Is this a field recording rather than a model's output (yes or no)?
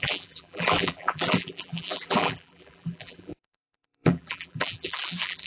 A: no